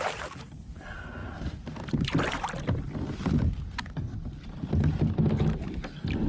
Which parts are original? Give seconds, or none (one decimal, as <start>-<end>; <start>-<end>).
0.0-6.3